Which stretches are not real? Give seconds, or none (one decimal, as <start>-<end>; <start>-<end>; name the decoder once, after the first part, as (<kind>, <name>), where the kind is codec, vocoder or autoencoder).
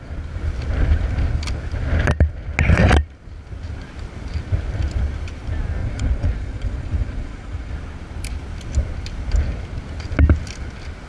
5.8-7.7 (vocoder, Vocos)